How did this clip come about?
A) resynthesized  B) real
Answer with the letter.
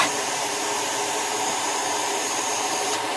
A